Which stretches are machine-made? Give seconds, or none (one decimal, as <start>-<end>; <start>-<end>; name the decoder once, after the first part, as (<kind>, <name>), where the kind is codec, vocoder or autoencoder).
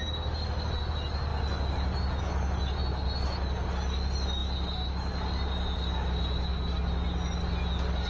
none